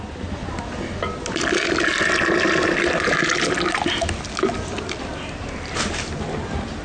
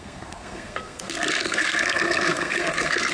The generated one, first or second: second